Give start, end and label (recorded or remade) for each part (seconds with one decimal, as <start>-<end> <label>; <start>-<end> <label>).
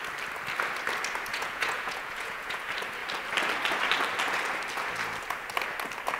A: 0.0-1.3 recorded; 1.3-2.6 remade; 2.6-6.2 recorded